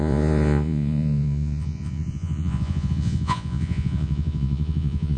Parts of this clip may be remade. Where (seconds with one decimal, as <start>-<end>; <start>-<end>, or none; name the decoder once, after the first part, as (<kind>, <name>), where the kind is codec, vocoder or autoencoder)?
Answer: 0.0-5.2 (vocoder, Vocos)